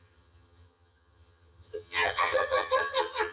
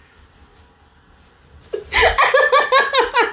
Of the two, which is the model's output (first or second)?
first